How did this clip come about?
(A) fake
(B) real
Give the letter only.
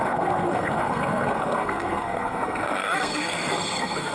A